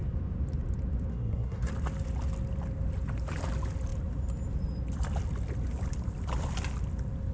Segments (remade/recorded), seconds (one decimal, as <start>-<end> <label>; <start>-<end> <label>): 0.0-1.1 recorded; 1.1-1.7 remade; 1.7-7.3 recorded